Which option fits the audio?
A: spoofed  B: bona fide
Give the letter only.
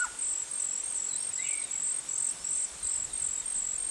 B